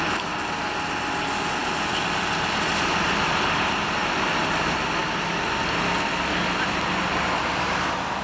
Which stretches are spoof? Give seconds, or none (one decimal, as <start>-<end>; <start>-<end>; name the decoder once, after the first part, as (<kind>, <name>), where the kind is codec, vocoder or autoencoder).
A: none